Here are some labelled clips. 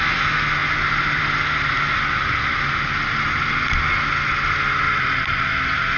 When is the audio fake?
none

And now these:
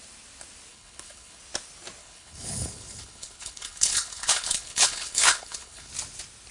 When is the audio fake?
0.7-1.4; 2.0-5.9

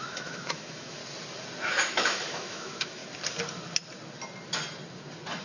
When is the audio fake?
0.0-1.0; 1.7-3.0